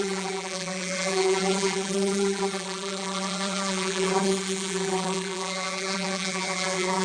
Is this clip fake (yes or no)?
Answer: yes